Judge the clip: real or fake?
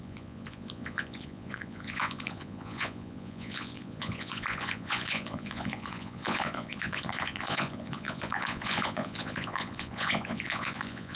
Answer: fake